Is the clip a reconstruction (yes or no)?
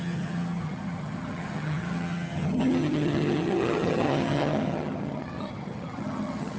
yes